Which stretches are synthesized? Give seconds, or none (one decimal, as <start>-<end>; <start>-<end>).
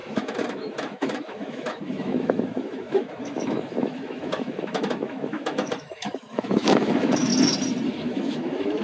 0.0-7.3; 7.9-8.8